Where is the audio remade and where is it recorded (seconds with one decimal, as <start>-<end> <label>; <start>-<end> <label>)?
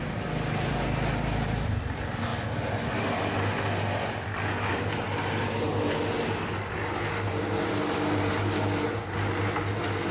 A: 0.0-10.1 recorded